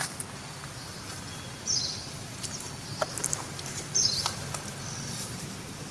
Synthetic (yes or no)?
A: no